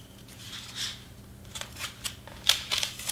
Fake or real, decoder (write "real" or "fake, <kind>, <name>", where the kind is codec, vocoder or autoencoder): fake, vocoder, BigVGAN v2